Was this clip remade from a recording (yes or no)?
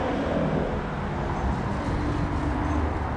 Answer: no